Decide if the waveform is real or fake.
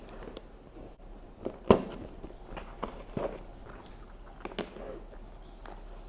real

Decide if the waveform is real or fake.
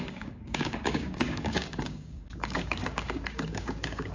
fake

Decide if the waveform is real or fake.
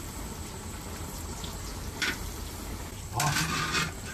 real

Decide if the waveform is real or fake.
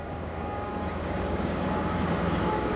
fake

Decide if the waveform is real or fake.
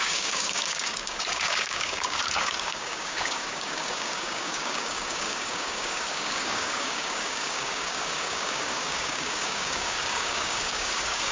fake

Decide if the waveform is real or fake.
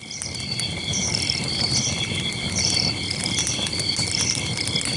real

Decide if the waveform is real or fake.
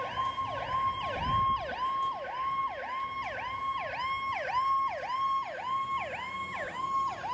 real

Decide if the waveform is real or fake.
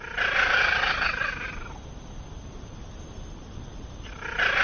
real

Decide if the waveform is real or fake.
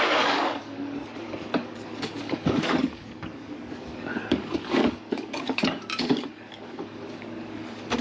fake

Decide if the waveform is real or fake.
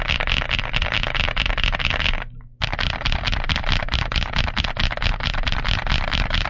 real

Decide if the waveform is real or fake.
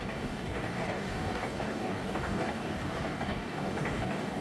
fake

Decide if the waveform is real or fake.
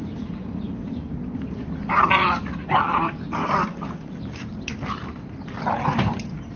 real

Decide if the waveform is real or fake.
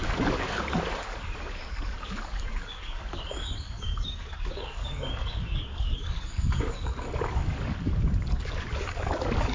fake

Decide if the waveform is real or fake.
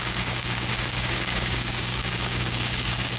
fake